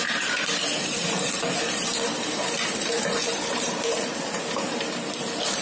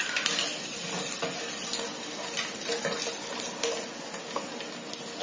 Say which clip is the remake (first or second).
first